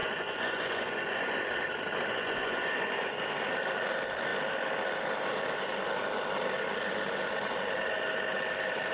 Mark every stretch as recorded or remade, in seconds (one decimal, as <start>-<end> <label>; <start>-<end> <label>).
0.0-1.4 remade; 1.4-2.1 recorded; 2.1-3.1 remade; 3.1-8.9 recorded